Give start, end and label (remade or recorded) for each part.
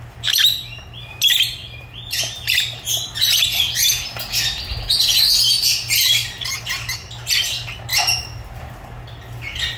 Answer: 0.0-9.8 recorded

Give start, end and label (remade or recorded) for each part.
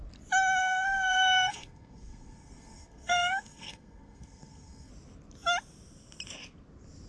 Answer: 0.0-0.6 recorded; 0.6-4.9 remade; 4.9-7.1 recorded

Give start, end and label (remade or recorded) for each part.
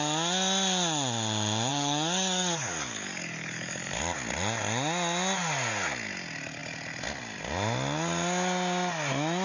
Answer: 0.0-1.7 recorded; 1.7-4.0 remade; 4.0-9.4 recorded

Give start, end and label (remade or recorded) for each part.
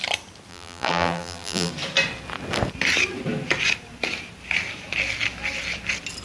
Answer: 0.0-0.5 recorded; 0.5-1.7 remade; 1.7-6.2 recorded